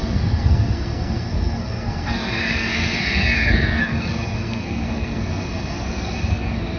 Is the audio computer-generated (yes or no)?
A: yes